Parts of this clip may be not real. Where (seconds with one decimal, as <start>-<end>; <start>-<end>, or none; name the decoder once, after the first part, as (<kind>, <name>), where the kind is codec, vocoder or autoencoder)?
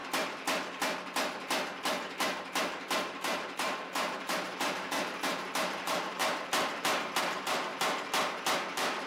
3.1-6.2 (vocoder, BigVGAN v2); 7.2-7.7; 8.7-9.1